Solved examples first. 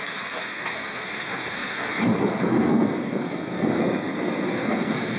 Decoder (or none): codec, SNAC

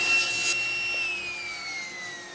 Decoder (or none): none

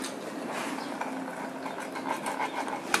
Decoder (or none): none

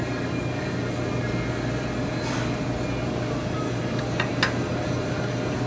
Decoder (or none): none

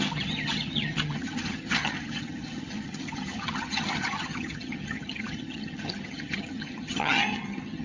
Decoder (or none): vocoder, HiFi-GAN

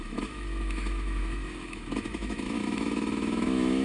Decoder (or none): autoencoder, DAC-VAE